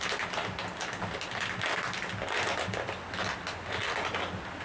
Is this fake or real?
real